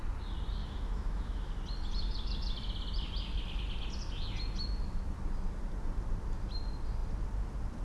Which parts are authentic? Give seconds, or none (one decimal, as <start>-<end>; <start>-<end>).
0.0-0.6; 1.5-7.8